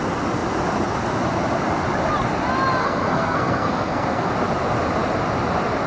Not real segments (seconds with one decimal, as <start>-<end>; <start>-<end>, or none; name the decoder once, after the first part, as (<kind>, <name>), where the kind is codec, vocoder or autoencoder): 2.8-4.3 (codec, SNAC)